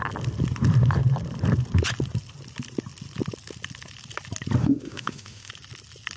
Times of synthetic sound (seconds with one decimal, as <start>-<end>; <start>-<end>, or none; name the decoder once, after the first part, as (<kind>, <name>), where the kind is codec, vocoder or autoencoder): 4.6-5.5 (autoencoder, DAC-VAE)